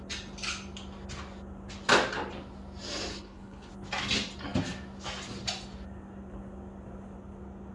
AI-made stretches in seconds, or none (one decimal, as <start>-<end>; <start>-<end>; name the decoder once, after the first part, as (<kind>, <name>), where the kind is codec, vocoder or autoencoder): 3.1-3.7 (codec, HILCodec)